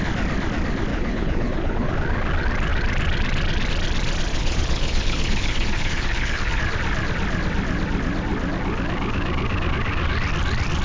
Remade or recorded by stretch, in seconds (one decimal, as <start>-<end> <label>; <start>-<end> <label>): 0.0-0.9 recorded; 0.9-1.9 remade; 1.9-4.3 recorded; 4.3-6.6 remade; 6.6-10.8 recorded